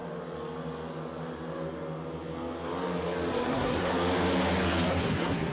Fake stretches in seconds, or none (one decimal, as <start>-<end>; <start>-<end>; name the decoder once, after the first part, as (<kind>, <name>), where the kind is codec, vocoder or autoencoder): 3.3-3.9 (codec, SNAC); 4.9-5.5